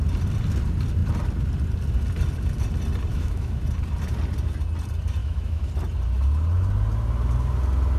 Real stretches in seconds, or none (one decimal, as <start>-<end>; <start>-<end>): 0.0-3.1; 3.6-5.2; 5.7-8.0